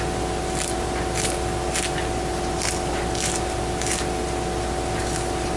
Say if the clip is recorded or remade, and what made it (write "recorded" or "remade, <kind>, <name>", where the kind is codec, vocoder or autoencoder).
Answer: recorded